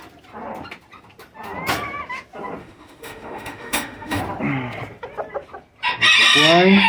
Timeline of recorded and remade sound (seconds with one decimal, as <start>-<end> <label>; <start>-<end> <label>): 0.0-2.6 recorded; 2.6-4.2 remade; 4.2-6.9 recorded